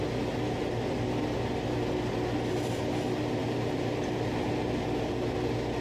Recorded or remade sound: recorded